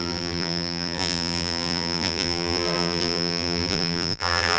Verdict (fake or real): fake